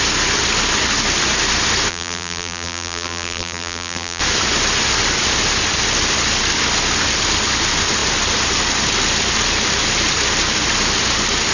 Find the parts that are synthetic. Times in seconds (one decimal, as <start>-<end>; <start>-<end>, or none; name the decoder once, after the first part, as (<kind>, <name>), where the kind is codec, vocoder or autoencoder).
1.9-4.2 (vocoder, BigVGAN v2)